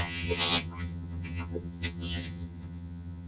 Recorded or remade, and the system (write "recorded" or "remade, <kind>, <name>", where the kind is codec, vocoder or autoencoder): remade, vocoder, HiFi-GAN